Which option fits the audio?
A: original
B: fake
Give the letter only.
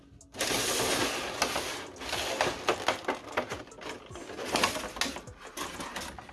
A